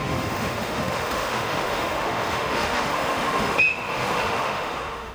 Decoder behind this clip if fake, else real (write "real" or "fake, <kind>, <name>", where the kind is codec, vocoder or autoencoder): fake, autoencoder, DAC-VAE